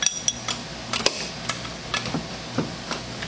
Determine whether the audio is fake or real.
real